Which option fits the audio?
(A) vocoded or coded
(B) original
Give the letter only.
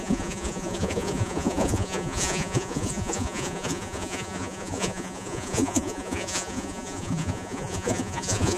A